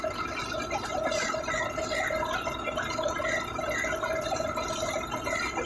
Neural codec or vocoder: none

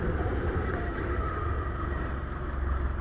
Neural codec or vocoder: none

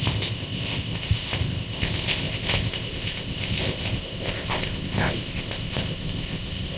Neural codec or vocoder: codec, ZipCodec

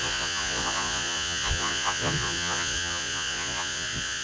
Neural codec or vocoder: vocoder, Vocos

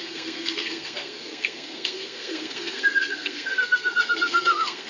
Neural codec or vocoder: codec, SNAC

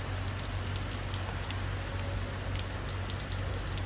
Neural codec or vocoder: none